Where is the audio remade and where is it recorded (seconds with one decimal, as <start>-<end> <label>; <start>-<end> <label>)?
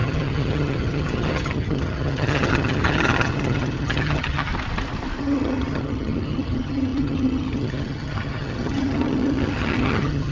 0.0-4.5 remade; 4.5-5.2 recorded; 5.2-10.3 remade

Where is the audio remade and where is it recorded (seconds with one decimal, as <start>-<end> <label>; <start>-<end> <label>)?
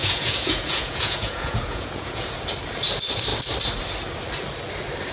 0.0-2.4 remade; 2.4-5.1 recorded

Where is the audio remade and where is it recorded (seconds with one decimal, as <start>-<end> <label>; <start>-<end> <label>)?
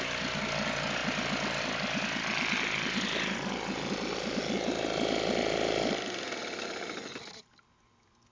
0.0-8.3 recorded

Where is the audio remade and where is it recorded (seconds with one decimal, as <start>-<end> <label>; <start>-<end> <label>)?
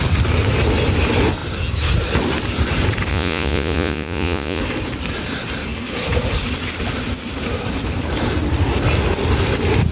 0.0-3.1 recorded; 3.1-4.6 remade; 4.6-9.9 recorded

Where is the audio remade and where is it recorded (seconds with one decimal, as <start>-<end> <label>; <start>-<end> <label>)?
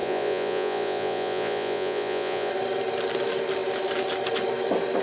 0.0-2.5 remade; 2.5-5.0 recorded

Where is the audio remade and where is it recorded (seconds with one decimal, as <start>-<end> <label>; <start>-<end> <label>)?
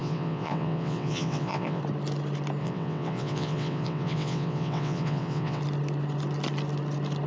0.0-1.8 remade; 1.8-2.6 recorded; 2.6-5.6 remade; 5.6-7.3 recorded